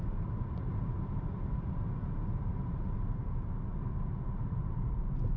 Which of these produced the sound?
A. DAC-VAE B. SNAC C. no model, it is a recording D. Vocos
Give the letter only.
C